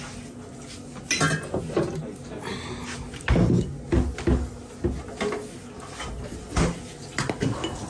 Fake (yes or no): no